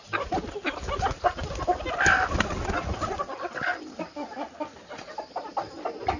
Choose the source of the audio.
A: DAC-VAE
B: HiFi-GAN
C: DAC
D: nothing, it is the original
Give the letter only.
D